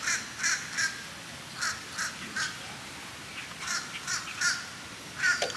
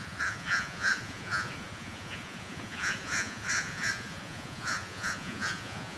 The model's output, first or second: second